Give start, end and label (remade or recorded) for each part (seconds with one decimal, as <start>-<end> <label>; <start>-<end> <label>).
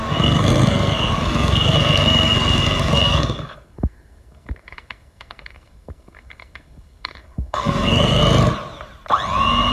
0.0-8.2 remade; 8.2-9.7 recorded